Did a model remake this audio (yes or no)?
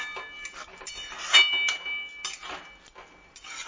no